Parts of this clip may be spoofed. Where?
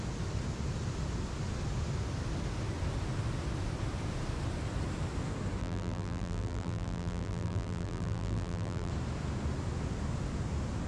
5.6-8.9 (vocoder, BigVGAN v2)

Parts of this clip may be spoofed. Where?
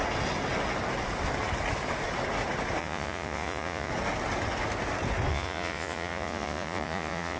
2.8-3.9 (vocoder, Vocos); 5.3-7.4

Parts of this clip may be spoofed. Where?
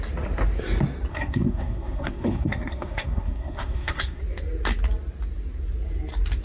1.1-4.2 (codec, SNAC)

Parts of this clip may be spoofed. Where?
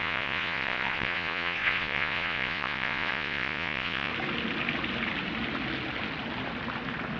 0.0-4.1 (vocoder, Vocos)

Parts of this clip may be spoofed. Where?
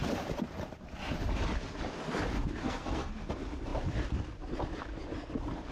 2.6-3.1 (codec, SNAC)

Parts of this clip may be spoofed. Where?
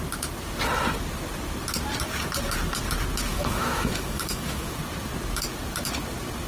3.3-4.8 (autoencoder, DAC-VAE)